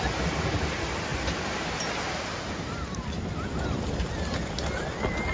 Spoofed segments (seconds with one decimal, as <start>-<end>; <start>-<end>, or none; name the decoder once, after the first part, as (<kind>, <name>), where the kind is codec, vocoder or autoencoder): none